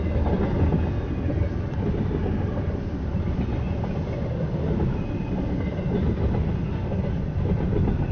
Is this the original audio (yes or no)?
yes